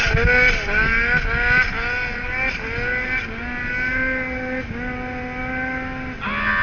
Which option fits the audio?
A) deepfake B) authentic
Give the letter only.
B